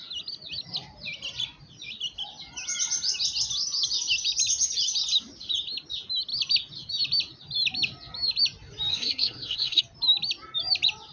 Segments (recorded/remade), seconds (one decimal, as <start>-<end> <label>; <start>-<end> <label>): 0.0-8.9 recorded; 8.9-9.8 remade; 9.8-11.1 recorded